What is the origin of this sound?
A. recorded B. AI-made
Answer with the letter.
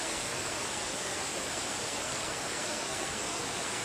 B